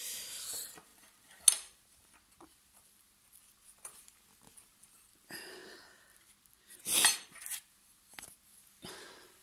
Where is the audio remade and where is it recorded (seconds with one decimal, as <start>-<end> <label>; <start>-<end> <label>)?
0.0-9.4 recorded